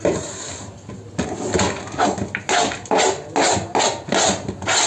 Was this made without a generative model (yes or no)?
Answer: yes